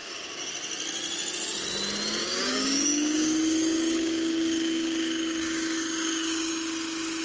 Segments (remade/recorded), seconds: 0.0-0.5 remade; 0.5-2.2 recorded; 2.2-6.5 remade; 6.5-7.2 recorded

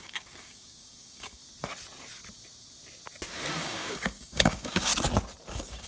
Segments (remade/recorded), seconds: 0.0-1.4 remade; 1.4-3.6 recorded; 3.6-4.9 remade; 4.9-5.5 recorded; 5.5-5.9 remade

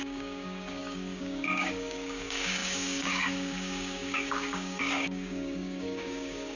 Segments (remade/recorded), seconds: 0.0-6.6 remade

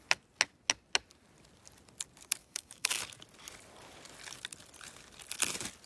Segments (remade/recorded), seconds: 0.0-2.4 recorded; 2.4-3.0 remade; 3.0-5.9 recorded

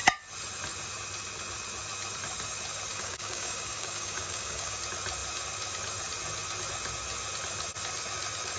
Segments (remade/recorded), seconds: 0.0-2.9 recorded; 2.9-4.8 remade; 4.8-8.6 recorded